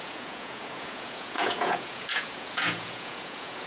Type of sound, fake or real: fake